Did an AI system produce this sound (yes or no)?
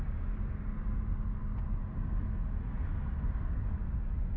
no